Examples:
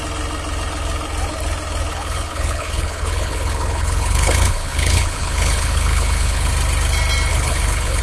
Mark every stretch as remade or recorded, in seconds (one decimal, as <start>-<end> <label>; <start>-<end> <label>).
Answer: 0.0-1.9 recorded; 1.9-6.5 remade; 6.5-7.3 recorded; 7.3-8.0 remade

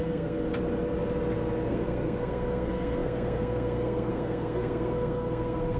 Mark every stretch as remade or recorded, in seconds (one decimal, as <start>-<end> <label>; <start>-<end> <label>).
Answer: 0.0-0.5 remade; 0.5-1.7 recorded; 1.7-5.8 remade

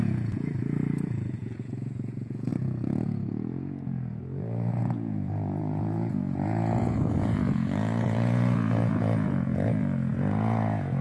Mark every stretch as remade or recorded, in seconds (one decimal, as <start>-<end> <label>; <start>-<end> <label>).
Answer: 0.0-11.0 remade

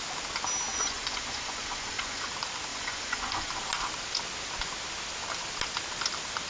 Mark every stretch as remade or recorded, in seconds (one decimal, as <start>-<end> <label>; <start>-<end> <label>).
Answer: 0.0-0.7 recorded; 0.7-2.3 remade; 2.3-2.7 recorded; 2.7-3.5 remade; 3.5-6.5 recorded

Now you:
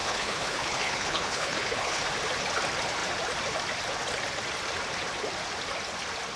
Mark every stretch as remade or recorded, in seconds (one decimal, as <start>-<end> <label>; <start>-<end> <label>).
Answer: 0.0-2.0 remade; 2.0-6.4 recorded

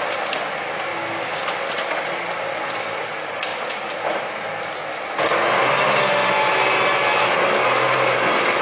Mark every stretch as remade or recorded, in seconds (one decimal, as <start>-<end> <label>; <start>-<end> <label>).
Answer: 0.0-0.9 recorded; 0.9-1.4 remade; 1.4-8.6 recorded